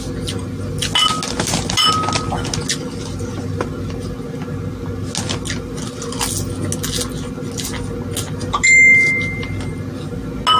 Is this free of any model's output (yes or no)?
yes